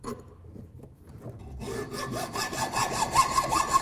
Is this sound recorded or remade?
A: recorded